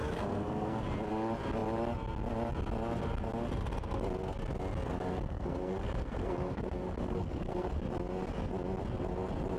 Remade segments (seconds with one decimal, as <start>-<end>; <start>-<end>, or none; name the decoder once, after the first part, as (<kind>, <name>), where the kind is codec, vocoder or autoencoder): 0.0-0.8 (codec, SNAC); 5.1-7.7